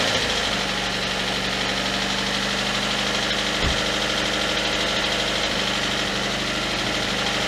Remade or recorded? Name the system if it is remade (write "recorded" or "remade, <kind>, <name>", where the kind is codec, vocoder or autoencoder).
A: recorded